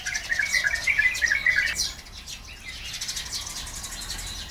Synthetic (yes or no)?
no